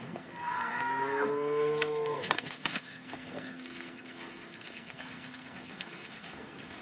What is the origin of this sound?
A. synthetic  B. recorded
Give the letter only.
A